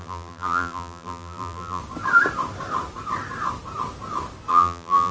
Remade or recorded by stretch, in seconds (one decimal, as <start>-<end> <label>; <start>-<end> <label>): 0.0-1.8 remade; 1.8-4.5 recorded; 4.5-5.1 remade